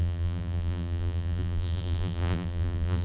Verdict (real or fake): fake